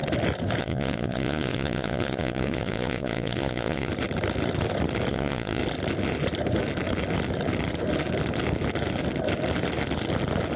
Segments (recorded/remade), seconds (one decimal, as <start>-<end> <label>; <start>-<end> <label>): 0.0-0.6 recorded; 0.6-3.9 remade; 3.9-5.1 recorded; 5.1-5.6 remade; 5.6-10.6 recorded